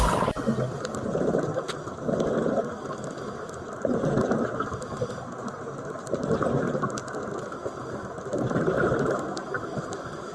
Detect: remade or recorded recorded